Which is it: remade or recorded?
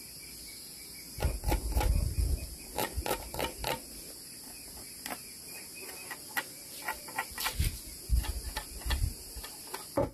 recorded